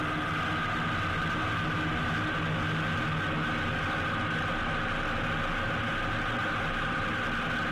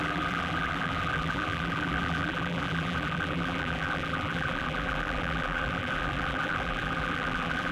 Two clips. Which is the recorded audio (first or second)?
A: first